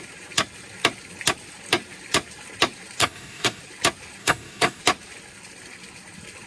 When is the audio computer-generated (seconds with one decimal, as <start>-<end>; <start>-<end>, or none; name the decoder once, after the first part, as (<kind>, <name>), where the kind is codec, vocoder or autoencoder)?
3.0-3.6 (codec, DAC); 4.2-4.8